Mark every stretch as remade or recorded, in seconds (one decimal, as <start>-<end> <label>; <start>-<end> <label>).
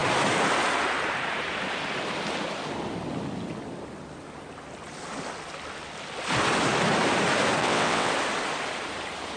0.0-7.6 recorded; 7.6-8.1 remade; 8.1-9.4 recorded